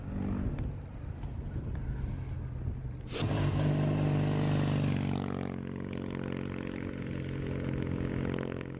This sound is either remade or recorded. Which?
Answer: recorded